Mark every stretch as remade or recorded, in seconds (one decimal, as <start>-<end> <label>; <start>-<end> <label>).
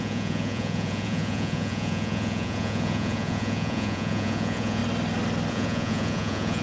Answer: 0.0-4.8 remade; 4.8-5.5 recorded; 5.5-6.6 remade